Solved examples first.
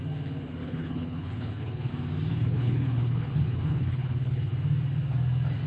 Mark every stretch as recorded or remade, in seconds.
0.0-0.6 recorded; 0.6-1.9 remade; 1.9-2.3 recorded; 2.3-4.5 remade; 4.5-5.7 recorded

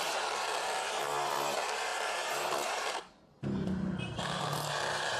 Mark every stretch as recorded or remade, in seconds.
0.0-5.2 recorded

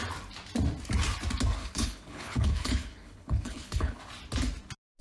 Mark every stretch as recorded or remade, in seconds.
0.0-1.6 recorded; 1.6-4.0 remade; 4.0-5.0 recorded

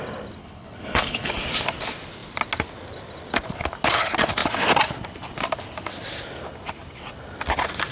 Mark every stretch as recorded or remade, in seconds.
0.0-0.4 recorded; 0.4-1.3 remade; 1.3-7.9 recorded